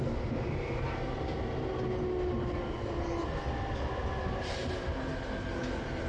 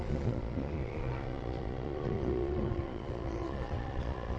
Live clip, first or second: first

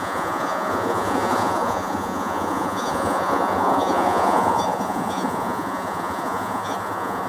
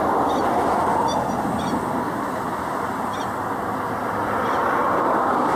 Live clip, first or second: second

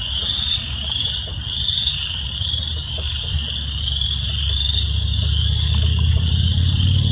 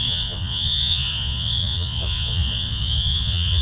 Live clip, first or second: first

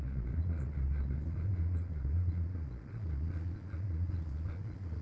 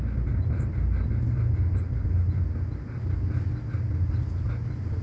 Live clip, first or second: second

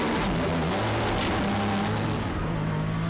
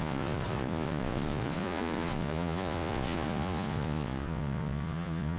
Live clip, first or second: first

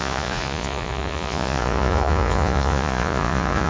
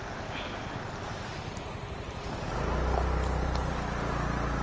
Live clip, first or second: second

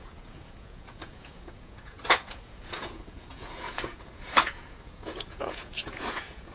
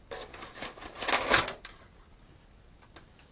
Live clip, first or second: second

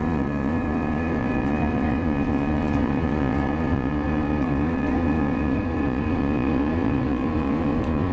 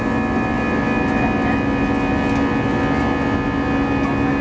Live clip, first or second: second